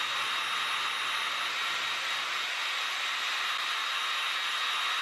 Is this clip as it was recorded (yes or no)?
yes